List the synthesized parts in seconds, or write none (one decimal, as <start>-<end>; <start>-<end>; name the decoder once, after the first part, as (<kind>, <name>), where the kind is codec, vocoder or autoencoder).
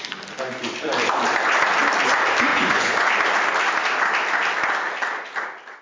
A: 2.5-3.1 (vocoder, Vocos)